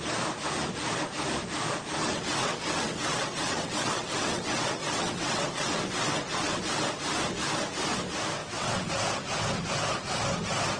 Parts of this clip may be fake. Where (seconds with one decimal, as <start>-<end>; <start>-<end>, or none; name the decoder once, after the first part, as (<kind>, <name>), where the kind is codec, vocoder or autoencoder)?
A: 2.0-6.6 (vocoder, WaveNeXt); 8.4-8.9